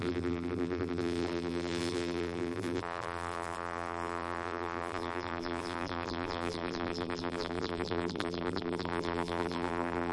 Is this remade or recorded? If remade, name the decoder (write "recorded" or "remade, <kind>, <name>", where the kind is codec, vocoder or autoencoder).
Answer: remade, vocoder, BigVGAN v2